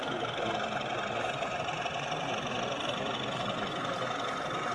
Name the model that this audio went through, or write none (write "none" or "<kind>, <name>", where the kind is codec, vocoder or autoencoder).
none